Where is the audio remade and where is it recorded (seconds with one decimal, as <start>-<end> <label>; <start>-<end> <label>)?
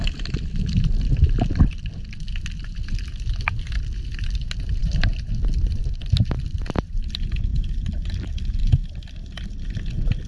0.0-4.8 recorded; 4.8-6.5 remade; 6.5-7.5 recorded; 7.5-8.3 remade; 8.3-10.3 recorded